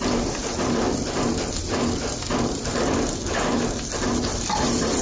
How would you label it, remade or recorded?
remade